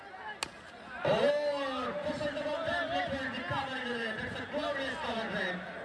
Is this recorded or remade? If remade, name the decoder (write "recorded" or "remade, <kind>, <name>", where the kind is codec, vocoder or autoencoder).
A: recorded